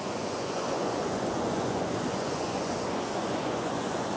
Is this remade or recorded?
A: remade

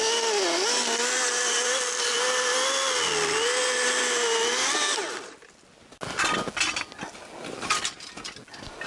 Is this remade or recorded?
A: recorded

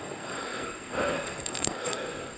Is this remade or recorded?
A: remade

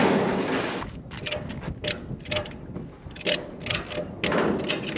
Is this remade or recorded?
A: recorded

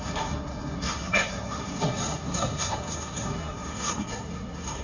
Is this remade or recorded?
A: remade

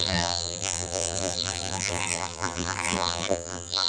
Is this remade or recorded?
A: remade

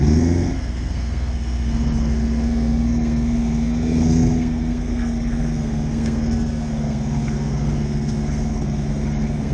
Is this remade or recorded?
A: remade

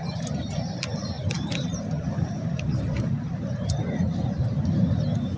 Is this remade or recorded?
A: remade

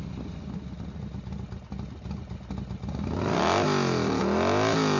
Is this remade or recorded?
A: recorded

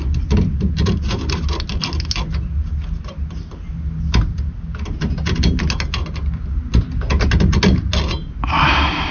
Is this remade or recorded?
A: recorded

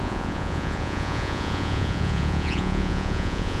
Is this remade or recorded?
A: remade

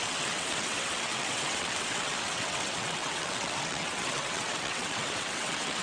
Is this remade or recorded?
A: remade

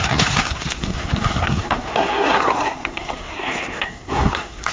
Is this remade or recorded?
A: remade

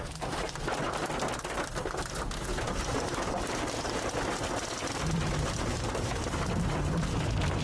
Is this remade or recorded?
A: recorded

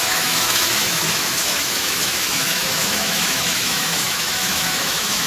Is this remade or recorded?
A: remade